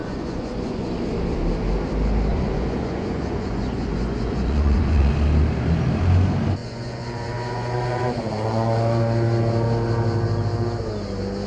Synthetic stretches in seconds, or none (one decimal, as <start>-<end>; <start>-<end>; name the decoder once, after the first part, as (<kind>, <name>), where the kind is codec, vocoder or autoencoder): 0.0-0.9 (vocoder, Vocos); 2.3-5.1; 6.6-9.0